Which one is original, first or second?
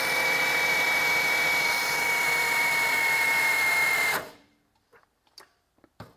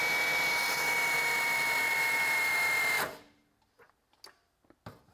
second